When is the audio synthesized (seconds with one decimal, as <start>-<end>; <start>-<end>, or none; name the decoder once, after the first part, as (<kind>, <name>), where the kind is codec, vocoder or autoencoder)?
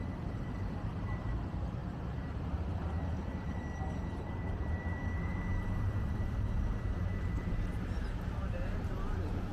0.0-9.5 (vocoder, BigVGAN v2)